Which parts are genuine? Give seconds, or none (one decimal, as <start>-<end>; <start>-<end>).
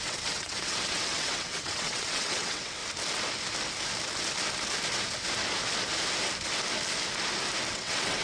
2.8-7.7